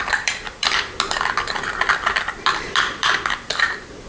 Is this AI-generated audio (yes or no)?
yes